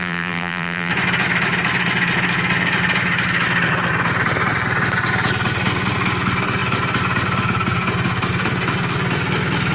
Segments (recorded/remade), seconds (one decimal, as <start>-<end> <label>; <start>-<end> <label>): 0.0-0.9 remade; 0.9-9.7 recorded

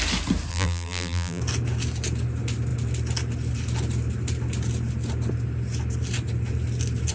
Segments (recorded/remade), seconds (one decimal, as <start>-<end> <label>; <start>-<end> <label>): 0.0-0.5 recorded; 0.5-1.4 remade; 1.4-7.1 recorded